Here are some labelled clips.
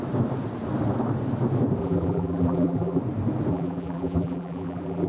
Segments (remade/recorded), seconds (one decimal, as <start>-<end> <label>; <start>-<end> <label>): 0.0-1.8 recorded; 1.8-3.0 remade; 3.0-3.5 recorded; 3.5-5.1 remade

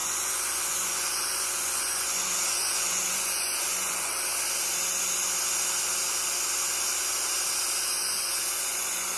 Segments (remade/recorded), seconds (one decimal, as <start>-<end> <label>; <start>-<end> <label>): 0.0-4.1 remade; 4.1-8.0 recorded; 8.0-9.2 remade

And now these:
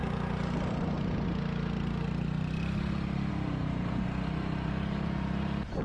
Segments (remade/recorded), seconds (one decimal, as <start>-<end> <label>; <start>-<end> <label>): 0.0-3.3 recorded; 3.3-5.8 remade

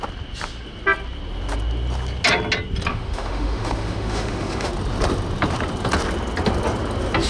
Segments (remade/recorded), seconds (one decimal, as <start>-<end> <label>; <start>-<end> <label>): 0.0-2.9 recorded; 2.9-4.7 remade; 4.7-7.3 recorded